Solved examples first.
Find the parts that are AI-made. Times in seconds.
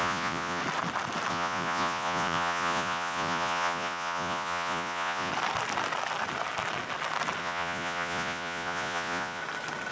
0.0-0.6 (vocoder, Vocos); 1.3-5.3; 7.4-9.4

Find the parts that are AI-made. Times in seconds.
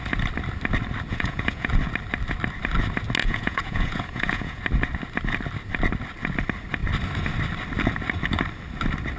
1.1-1.7 (vocoder, Vocos); 3.2-4.6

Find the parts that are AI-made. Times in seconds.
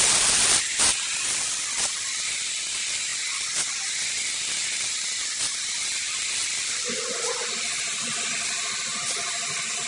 none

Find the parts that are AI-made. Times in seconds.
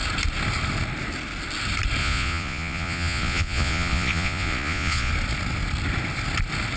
2.0-5.1 (vocoder, Vocos)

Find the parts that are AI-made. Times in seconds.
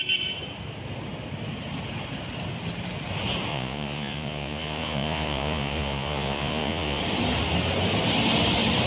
3.5-7.0 (vocoder, Vocos)